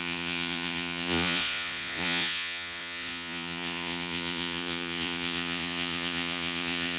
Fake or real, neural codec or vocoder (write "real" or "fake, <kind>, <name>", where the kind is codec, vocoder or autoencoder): fake, vocoder, Vocos